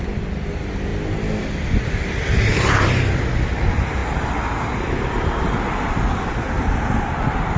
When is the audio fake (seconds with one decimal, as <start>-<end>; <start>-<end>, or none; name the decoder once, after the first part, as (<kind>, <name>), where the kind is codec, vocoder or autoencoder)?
none